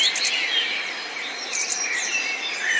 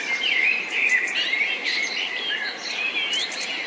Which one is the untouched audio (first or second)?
first